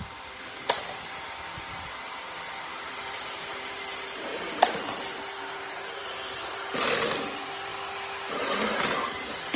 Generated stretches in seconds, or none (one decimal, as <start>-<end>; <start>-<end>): 2.7-3.9; 4.3-4.9